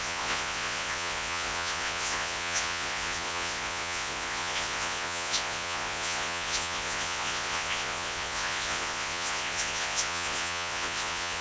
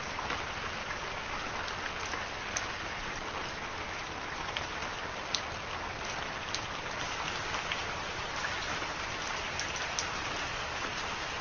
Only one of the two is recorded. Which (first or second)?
second